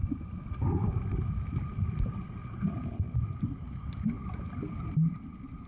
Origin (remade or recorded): recorded